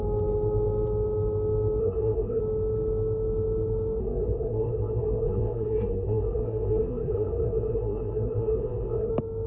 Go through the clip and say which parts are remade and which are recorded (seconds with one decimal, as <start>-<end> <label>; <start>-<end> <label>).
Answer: 0.0-1.8 recorded; 1.8-2.4 remade; 2.4-4.0 recorded; 4.0-9.1 remade; 9.1-9.5 recorded